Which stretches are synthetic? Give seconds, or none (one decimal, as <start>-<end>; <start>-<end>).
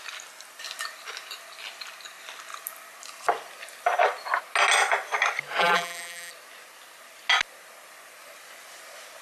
5.6-6.3